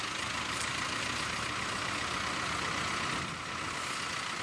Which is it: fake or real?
real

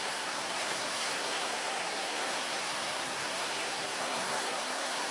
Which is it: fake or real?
fake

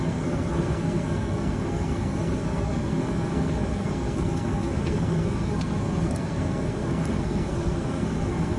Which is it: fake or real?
fake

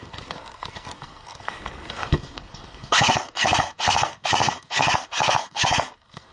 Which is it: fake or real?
fake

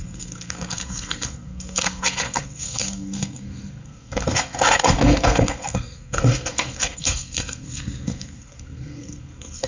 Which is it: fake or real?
fake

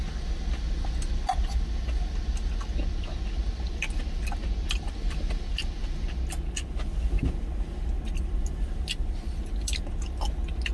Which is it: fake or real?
real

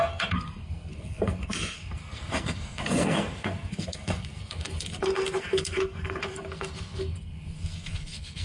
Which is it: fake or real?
fake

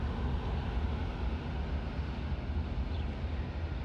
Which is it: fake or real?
real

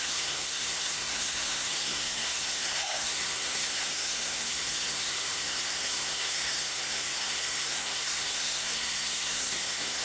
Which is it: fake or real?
fake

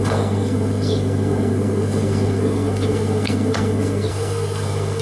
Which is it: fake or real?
fake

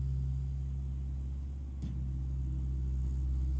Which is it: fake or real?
real